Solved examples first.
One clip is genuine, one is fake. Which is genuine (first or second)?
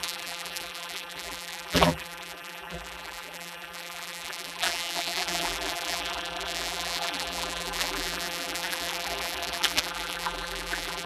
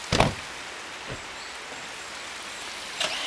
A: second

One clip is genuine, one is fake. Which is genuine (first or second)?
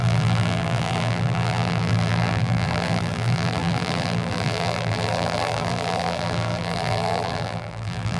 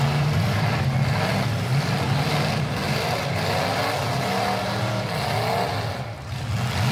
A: second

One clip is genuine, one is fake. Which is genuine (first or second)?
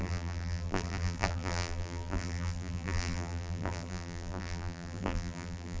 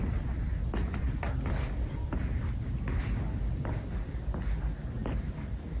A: second